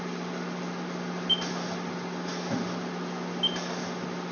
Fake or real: real